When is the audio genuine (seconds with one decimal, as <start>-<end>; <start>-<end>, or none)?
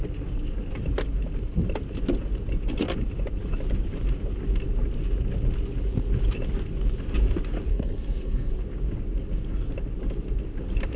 0.0-7.7; 8.5-11.0